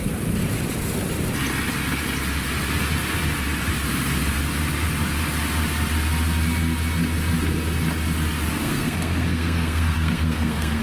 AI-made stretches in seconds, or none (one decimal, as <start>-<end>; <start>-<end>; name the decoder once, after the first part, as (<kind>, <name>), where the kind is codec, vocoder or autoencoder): 8.6-10.8 (codec, SNAC)